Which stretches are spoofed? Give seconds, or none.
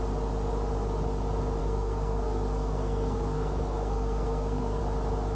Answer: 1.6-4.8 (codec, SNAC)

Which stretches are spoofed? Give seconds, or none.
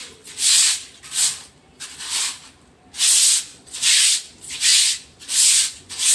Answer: 3.5-4.1 (vocoder, Vocos); 4.7-6.1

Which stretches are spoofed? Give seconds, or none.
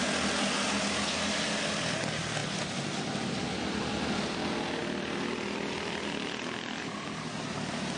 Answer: none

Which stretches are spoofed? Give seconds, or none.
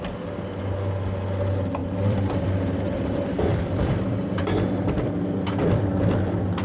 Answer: 1.8-4.4 (vocoder, BigVGAN v2)